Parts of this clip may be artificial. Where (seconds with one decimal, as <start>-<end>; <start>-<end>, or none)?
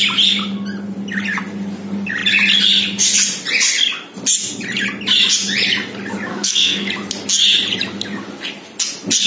6.3-6.9